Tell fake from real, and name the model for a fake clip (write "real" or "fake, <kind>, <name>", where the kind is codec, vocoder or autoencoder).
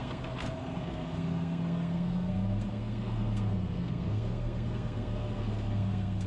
fake, codec, SNAC